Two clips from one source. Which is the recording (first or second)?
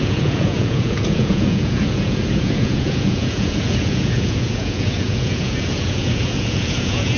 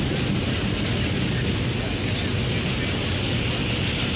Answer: second